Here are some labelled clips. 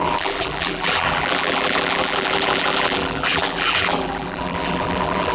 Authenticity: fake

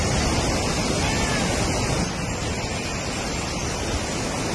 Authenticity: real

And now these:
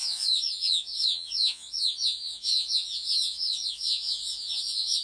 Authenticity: fake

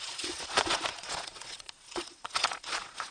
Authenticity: fake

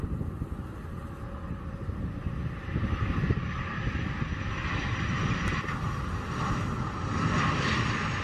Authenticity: real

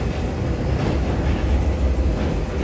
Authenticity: real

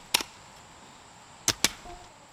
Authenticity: real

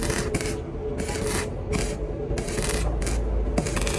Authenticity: real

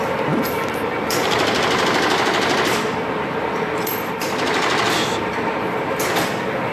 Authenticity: real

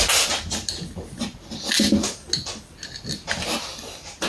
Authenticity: real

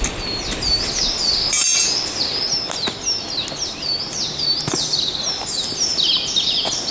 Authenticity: real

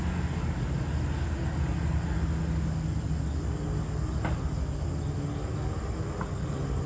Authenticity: real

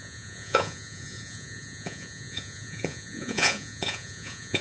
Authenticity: fake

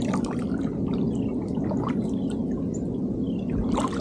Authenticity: real